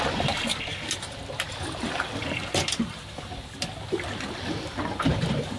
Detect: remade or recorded recorded